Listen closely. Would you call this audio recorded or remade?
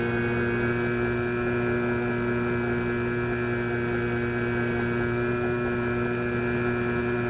recorded